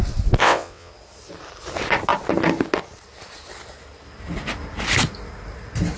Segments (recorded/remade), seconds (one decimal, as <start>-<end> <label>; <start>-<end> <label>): 0.0-0.4 recorded; 0.4-0.9 remade; 0.9-6.0 recorded